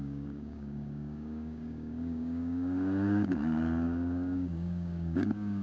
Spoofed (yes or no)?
yes